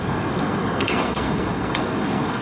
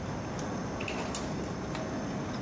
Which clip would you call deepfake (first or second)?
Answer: first